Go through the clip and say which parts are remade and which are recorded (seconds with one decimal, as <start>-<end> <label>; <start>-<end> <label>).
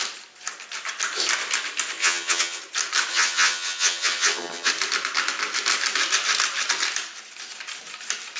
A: 0.0-2.0 recorded; 2.0-2.6 remade; 2.6-3.1 recorded; 3.1-4.7 remade; 4.7-8.4 recorded